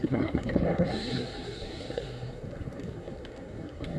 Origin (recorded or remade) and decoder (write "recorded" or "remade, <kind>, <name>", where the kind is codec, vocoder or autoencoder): remade, codec, SNAC